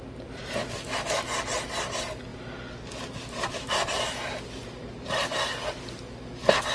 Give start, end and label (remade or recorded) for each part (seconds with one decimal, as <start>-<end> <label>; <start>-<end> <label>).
0.0-6.7 recorded